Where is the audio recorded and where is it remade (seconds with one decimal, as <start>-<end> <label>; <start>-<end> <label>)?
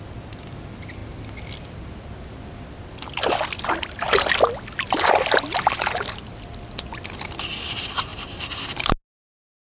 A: 0.0-9.7 recorded